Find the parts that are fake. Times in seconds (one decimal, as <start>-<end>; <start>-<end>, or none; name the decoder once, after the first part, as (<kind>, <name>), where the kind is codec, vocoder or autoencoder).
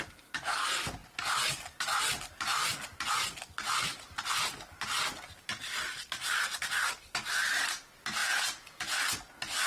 8.2-9.0 (vocoder, Vocos)